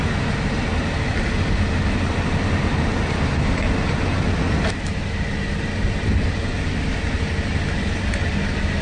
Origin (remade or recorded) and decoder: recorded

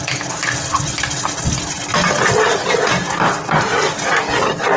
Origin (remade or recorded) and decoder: recorded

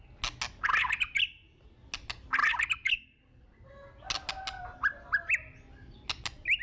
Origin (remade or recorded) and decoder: recorded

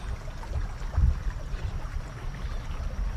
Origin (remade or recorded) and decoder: recorded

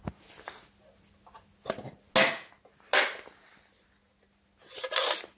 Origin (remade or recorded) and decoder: recorded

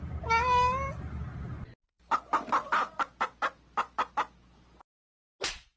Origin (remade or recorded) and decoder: recorded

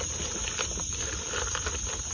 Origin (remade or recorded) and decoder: recorded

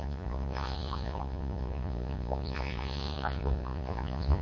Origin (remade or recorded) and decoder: remade, vocoder, Vocos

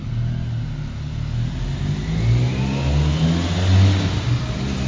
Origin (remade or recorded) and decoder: recorded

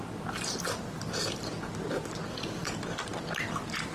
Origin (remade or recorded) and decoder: recorded